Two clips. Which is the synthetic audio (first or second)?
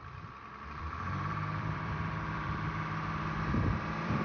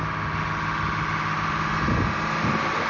first